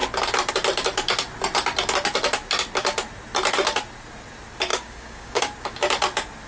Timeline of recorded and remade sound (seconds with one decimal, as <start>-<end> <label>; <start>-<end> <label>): 0.0-4.7 recorded; 4.7-5.4 remade; 5.4-6.5 recorded